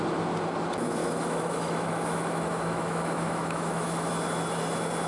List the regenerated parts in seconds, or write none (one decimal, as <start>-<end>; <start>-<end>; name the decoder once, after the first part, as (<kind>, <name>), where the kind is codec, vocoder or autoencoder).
1.0-4.1 (autoencoder, DAC-VAE)

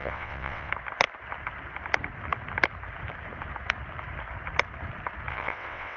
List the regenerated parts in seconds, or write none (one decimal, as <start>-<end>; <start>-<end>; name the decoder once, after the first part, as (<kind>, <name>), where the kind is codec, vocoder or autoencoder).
0.0-0.7 (vocoder, WaveNeXt); 5.3-6.0

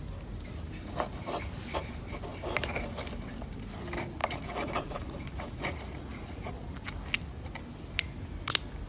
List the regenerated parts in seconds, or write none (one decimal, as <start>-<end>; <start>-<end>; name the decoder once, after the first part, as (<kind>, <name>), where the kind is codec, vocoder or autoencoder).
4.2-6.5 (vocoder, Vocos)